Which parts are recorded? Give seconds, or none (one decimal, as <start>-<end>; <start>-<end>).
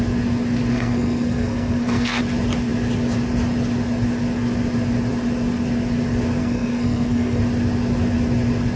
0.0-0.7; 2.2-6.4; 7.4-8.8